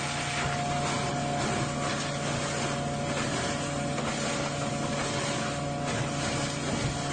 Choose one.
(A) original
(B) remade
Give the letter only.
A